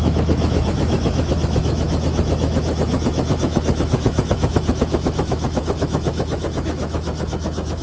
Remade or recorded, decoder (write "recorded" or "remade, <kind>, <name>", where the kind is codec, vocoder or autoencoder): remade, autoencoder, DAC-VAE